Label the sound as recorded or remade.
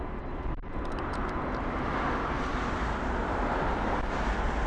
recorded